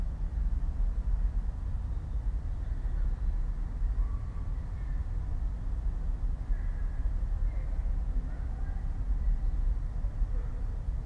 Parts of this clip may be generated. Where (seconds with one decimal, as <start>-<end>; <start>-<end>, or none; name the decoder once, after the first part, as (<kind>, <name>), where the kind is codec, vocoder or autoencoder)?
9.8-10.5 (vocoder, BigVGAN v2)